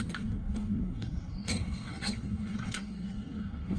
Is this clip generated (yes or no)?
yes